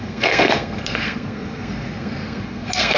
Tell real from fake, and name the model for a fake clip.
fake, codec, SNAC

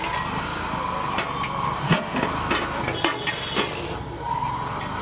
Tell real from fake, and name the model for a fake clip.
real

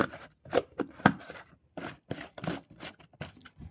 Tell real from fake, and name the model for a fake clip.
fake, vocoder, BigVGAN v2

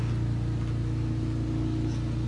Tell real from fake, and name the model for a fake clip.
real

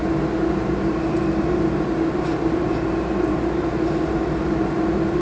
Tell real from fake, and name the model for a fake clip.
real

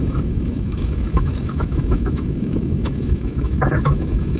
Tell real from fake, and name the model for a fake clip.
fake, autoencoder, DAC-VAE